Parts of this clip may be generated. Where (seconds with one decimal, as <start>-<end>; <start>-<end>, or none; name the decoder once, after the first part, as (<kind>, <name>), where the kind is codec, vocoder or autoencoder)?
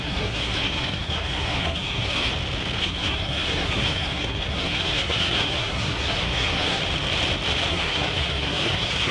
0.0-2.3 (codec, SNAC); 2.8-6.8; 7.7-9.1